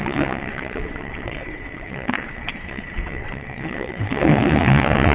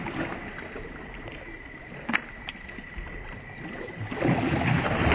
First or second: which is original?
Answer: second